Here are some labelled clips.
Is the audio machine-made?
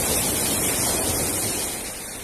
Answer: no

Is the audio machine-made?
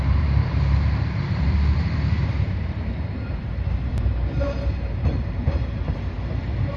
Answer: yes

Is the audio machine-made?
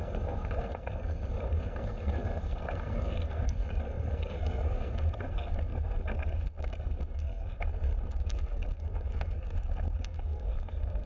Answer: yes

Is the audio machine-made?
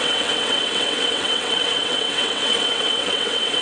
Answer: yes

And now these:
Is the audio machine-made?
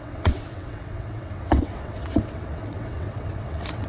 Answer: yes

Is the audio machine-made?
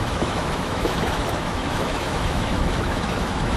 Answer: yes